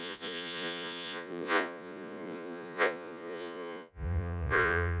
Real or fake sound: fake